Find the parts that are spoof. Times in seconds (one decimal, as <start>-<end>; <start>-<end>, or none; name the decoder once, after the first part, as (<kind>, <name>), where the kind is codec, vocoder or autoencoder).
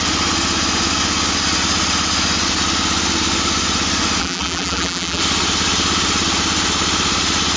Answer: 4.2-5.2 (vocoder, BigVGAN v2)